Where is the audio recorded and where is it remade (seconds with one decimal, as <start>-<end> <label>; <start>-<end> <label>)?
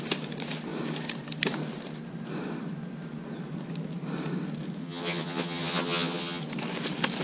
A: 0.0-4.8 recorded; 4.8-6.4 remade; 6.4-7.2 recorded